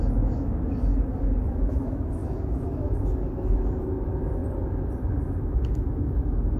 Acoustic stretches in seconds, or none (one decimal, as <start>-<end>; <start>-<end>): 4.4-5.1